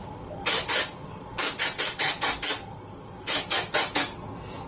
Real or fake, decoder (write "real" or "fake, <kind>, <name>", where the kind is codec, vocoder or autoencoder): real